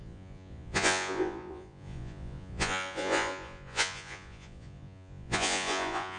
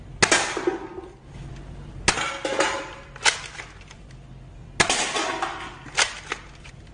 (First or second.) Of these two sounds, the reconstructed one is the first